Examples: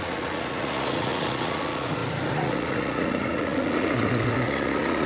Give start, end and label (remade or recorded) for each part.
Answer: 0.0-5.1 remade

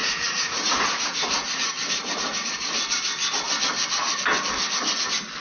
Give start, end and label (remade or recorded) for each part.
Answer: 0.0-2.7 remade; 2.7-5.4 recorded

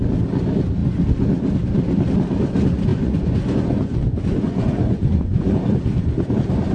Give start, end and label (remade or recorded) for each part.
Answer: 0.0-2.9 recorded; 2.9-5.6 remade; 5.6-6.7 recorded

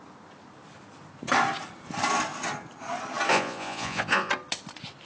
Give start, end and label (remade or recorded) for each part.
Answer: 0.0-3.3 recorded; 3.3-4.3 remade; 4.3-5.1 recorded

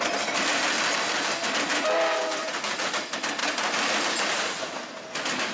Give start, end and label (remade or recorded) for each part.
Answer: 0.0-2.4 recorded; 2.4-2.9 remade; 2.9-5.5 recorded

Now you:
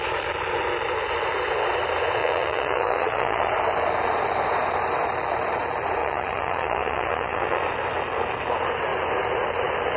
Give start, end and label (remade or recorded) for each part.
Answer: 0.0-2.2 recorded; 2.2-3.5 remade; 3.5-6.0 recorded; 6.0-7.6 remade; 7.6-10.0 recorded

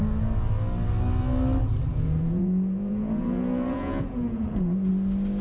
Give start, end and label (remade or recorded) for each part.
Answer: 0.0-1.9 recorded; 1.9-4.9 remade; 4.9-5.4 recorded